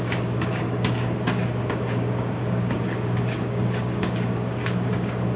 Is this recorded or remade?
remade